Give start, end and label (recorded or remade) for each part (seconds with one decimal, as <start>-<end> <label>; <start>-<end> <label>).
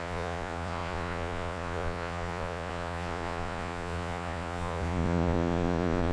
0.0-6.1 remade